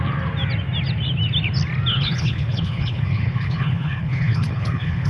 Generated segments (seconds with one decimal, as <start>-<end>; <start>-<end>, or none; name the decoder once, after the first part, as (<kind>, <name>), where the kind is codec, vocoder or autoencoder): 1.9-5.1 (codec, HILCodec)